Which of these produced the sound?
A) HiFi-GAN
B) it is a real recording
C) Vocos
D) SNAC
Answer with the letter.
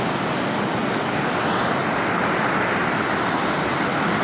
B